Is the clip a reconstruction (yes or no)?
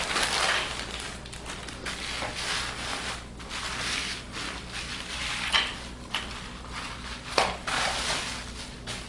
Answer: no